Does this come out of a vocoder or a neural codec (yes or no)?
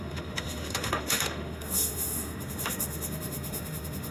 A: yes